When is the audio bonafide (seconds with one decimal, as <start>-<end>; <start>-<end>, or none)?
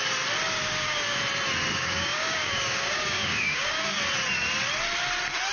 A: 0.0-0.6; 1.2-1.7; 4.0-5.5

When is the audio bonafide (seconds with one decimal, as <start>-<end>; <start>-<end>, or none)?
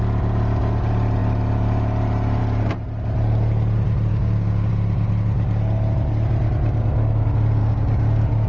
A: 0.0-4.1; 4.7-7.6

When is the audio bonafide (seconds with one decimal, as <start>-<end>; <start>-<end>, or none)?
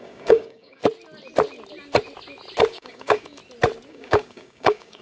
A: 0.8-2.7; 3.4-3.9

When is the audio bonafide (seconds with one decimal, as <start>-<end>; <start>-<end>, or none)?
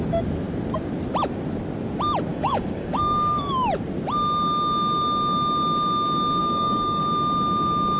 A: 0.0-2.3; 3.5-6.4; 7.0-8.0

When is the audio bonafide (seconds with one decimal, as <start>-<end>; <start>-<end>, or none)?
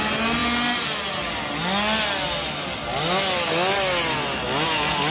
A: 0.0-5.1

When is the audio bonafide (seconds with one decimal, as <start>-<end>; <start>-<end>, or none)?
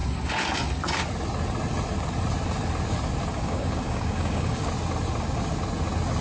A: 0.0-3.3; 4.7-6.2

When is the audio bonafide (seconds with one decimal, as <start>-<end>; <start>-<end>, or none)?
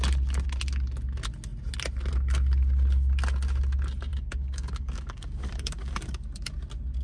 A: 0.0-4.1; 6.5-7.0